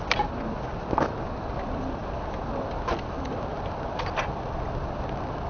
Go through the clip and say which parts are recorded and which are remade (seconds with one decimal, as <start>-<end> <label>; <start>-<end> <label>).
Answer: 0.0-5.5 recorded